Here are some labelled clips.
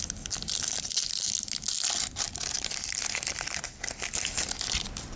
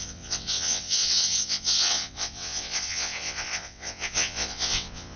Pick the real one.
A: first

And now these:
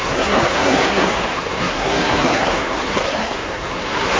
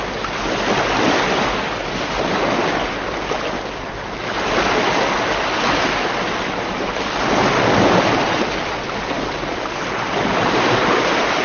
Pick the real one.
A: second